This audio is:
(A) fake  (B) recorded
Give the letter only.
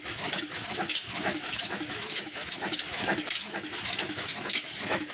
A